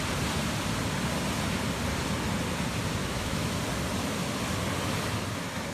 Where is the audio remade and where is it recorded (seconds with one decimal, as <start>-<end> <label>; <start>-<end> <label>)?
0.0-3.0 recorded; 3.0-3.6 remade; 3.6-5.7 recorded